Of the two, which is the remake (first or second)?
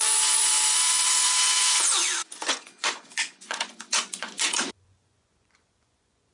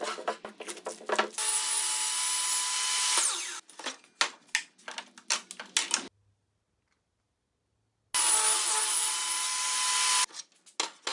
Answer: first